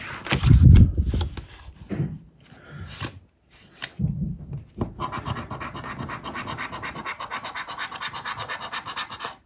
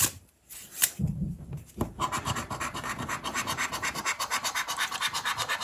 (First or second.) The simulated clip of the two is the second